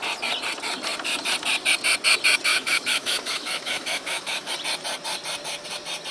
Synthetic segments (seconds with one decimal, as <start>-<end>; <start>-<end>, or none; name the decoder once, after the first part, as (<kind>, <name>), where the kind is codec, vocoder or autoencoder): 2.5-4.5 (autoencoder, DAC-VAE)